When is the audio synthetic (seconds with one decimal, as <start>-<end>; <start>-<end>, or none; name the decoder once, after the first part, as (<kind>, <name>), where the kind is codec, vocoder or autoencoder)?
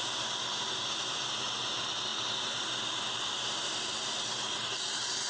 none